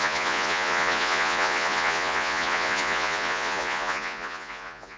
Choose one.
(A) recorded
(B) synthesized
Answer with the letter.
B